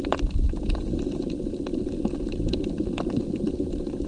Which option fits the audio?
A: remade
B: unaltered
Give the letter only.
B